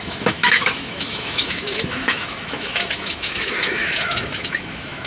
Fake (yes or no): yes